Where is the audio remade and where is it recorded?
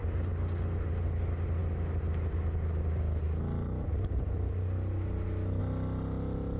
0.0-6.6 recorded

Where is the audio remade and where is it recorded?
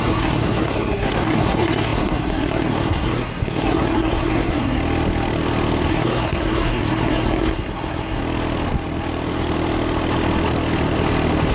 0.0-4.8 remade; 4.8-5.9 recorded; 5.9-8.2 remade; 8.2-11.5 recorded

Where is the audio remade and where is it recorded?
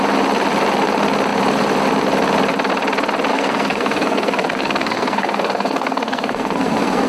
0.0-3.3 recorded; 3.3-7.1 remade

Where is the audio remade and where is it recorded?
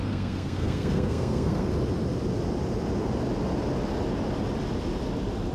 0.0-1.7 remade; 1.7-5.5 recorded